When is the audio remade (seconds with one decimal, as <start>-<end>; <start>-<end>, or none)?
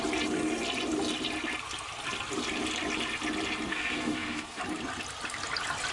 3.7-4.6